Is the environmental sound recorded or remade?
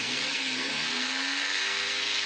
remade